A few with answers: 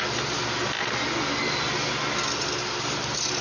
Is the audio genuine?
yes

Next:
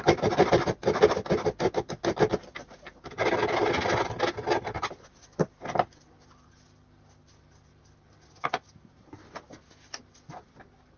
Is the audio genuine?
yes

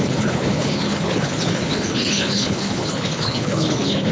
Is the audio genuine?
no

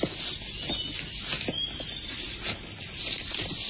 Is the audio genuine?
yes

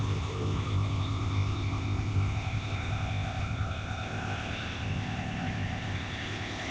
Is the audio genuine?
no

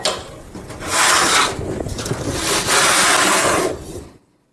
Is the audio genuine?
yes